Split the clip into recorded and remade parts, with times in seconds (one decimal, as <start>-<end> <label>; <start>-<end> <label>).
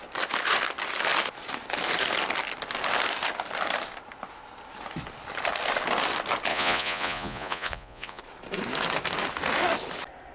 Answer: 0.0-6.5 recorded; 6.5-8.2 remade; 8.2-10.3 recorded